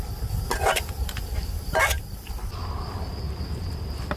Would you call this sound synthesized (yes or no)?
no